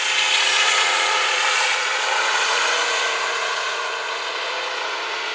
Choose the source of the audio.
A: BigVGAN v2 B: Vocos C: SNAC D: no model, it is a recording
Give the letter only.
B